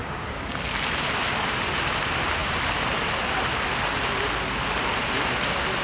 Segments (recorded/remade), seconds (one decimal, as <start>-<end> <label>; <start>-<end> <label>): 0.0-0.5 remade; 0.5-5.8 recorded